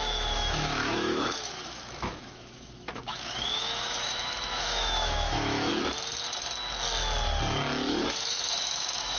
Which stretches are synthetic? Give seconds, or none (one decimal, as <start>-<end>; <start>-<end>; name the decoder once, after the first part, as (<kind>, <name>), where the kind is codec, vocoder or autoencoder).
0.0-5.7 (autoencoder, DAC-VAE); 8.1-9.2